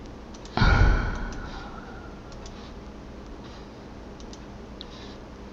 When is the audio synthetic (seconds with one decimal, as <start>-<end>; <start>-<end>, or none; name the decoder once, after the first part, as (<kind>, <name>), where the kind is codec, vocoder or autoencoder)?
none